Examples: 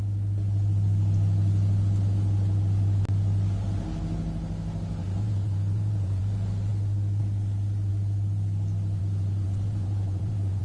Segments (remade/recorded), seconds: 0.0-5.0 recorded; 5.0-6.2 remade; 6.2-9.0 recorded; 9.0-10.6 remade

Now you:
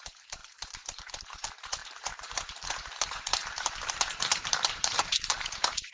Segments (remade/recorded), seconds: 0.0-5.9 remade

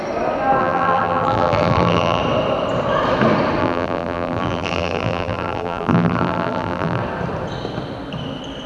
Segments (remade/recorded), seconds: 0.0-0.6 recorded; 0.6-2.2 remade; 2.2-3.6 recorded; 3.6-7.0 remade; 7.0-8.7 recorded